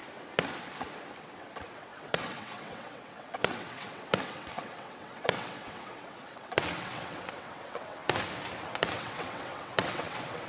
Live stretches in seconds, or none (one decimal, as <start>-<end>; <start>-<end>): 0.0-1.2; 8.0-8.6